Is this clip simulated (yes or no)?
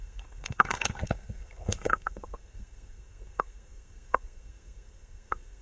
yes